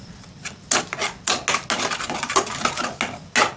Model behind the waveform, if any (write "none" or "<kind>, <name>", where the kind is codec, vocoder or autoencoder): none